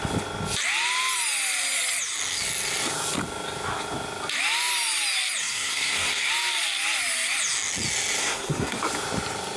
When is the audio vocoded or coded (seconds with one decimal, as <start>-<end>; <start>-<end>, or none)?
5.4-6.3; 8.2-8.8